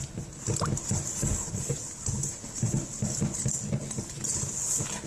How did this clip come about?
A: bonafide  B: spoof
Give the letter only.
A